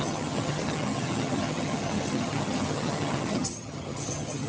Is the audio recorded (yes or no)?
no